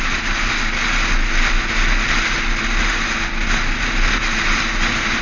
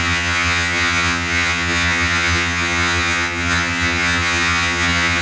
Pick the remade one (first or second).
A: second